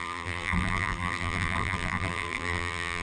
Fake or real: fake